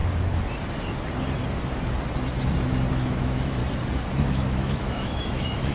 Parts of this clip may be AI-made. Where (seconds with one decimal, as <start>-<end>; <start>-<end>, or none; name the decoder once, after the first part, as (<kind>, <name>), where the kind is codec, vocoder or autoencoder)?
2.9-3.6 (autoencoder, DAC-VAE); 4.3-5.7